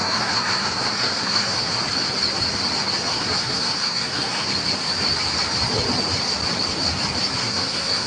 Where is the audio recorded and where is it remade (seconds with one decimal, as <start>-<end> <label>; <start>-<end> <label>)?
0.0-1.8 remade; 1.8-3.1 recorded; 3.1-4.5 remade; 4.5-7.4 recorded; 7.4-8.1 remade